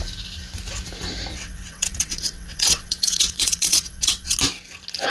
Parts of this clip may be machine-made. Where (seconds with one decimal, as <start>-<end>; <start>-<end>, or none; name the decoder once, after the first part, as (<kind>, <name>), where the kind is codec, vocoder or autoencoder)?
1.3-4.4 (vocoder, WaveNeXt)